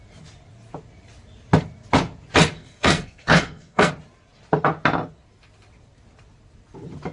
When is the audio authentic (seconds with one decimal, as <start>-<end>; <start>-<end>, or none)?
0.0-2.6; 3.9-7.1